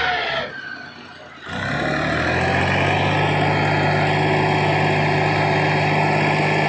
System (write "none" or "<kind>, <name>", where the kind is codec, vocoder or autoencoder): none